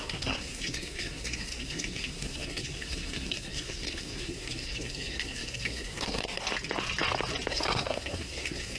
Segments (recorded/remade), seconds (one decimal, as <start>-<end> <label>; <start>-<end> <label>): 0.0-6.4 remade; 6.4-7.5 recorded; 7.5-8.8 remade

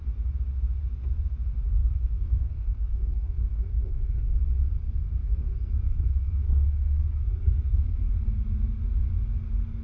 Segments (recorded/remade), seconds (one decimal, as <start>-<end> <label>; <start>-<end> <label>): 0.0-1.8 recorded; 1.8-4.4 remade; 4.4-5.2 recorded; 5.2-8.1 remade; 8.1-9.8 recorded

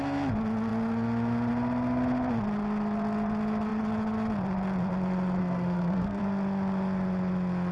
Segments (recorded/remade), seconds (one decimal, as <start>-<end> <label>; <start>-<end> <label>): 0.0-5.4 recorded; 5.4-6.2 remade; 6.2-7.7 recorded

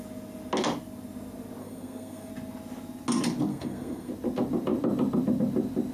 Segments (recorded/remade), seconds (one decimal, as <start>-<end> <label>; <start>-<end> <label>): 0.0-1.6 recorded; 1.6-2.3 remade; 2.3-3.5 recorded; 3.5-4.1 remade; 4.1-5.9 recorded

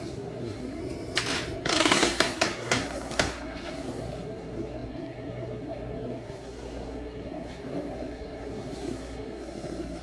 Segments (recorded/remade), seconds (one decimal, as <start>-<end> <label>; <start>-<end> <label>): 0.0-0.8 remade; 0.8-1.6 recorded; 1.6-10.0 remade

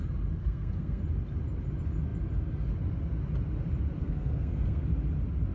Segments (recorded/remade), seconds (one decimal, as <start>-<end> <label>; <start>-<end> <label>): 0.0-0.4 recorded; 0.4-1.0 remade; 1.0-4.0 recorded; 4.0-4.9 remade; 4.9-5.5 recorded